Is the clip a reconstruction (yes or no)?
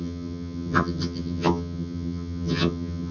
yes